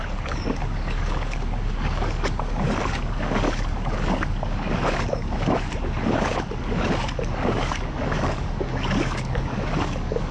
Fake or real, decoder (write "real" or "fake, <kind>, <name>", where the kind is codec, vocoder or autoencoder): fake, codec, DAC